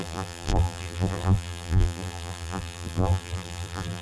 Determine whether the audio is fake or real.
fake